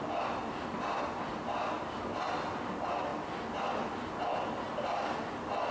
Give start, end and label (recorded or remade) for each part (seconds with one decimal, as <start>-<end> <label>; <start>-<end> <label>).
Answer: 0.0-5.7 recorded